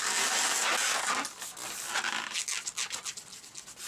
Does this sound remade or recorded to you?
recorded